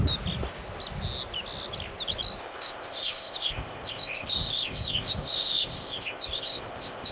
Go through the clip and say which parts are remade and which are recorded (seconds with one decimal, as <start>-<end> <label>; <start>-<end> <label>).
0.0-2.4 recorded; 2.4-7.1 remade